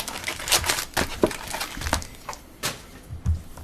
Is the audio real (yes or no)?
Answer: yes